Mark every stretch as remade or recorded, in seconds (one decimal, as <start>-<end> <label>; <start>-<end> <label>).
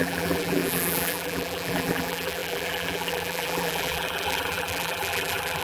0.0-5.6 remade